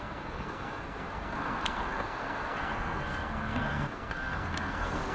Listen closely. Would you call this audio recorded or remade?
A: remade